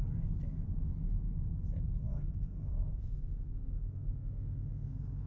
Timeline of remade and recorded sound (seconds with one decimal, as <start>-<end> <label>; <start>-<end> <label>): 0.0-2.0 recorded; 2.0-5.3 remade